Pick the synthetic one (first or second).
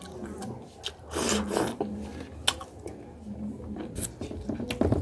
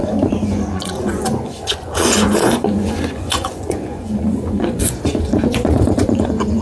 second